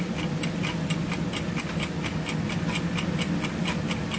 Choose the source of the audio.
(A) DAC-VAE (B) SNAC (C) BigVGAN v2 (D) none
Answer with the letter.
D